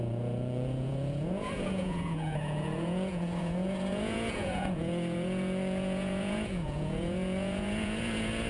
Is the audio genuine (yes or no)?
no